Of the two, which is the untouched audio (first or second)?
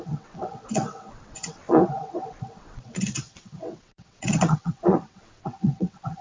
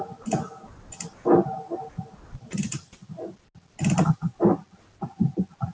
second